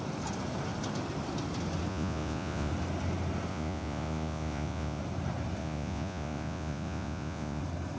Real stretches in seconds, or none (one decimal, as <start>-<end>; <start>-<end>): 0.0-1.9; 2.7-3.5; 5.0-5.6; 7.6-8.0